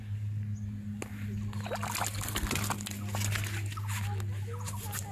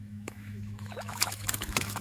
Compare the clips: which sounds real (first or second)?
first